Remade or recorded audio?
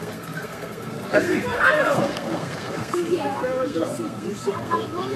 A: remade